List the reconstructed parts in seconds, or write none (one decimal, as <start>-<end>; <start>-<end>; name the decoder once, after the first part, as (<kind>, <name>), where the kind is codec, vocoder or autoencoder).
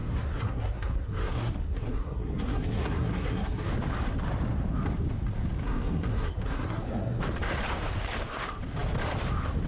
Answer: 0.0-3.7 (codec, SNAC); 5.6-7.2